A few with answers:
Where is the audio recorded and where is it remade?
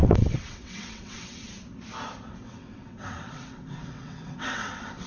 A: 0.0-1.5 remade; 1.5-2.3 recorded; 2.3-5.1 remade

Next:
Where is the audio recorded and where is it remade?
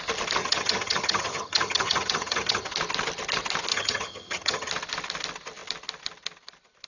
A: 0.0-0.4 recorded; 0.4-2.7 remade; 2.7-3.7 recorded; 3.7-4.7 remade; 4.7-6.9 recorded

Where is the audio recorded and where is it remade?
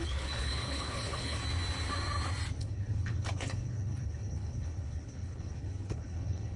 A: 0.0-1.4 remade; 1.4-2.6 recorded; 2.6-6.6 remade